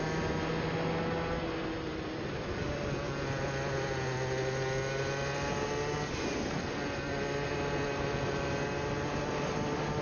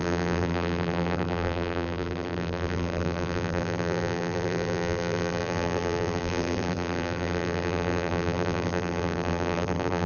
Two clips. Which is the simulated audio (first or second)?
second